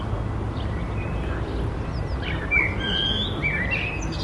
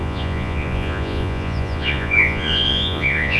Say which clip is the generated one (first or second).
second